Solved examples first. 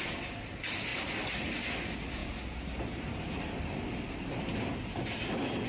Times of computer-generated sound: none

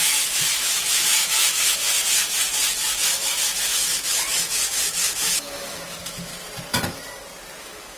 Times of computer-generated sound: 0.0-1.8 (autoencoder, DAC-VAE); 2.7-6.3; 7.6-8.0

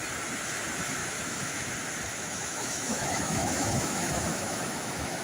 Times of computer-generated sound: 1.0-1.7 (autoencoder, DAC-VAE); 2.1-5.2